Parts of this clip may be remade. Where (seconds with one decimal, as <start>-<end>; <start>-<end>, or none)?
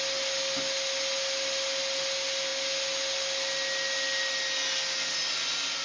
none